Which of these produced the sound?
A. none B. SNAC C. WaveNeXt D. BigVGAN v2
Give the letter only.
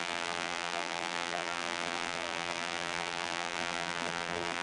D